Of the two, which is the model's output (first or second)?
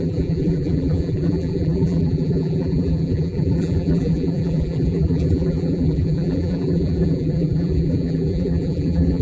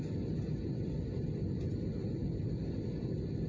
first